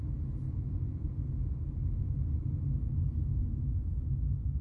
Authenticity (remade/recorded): remade